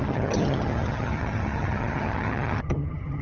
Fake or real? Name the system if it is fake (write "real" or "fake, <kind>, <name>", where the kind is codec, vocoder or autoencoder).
fake, vocoder, HiFi-GAN